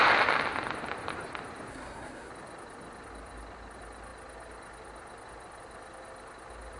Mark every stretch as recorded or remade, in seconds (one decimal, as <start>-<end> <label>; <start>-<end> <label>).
0.0-1.7 recorded; 1.7-2.3 remade; 2.3-6.8 recorded